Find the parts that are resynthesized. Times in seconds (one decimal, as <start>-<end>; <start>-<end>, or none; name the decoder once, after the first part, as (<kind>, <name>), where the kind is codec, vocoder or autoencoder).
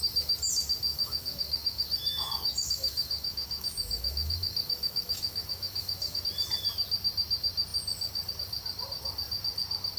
0.9-6.2 (autoencoder, DAC-VAE)